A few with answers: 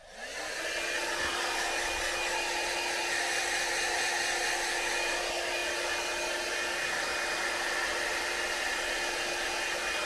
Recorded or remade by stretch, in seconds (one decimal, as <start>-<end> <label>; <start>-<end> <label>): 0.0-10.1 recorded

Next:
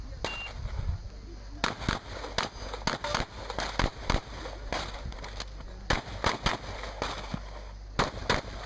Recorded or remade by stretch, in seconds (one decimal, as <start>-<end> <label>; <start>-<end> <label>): 0.0-8.7 recorded

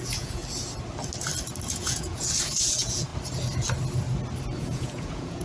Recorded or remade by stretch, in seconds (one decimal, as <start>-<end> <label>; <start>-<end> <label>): 0.0-0.4 remade; 0.4-1.7 recorded; 1.7-3.1 remade; 3.1-4.6 recorded; 4.6-5.4 remade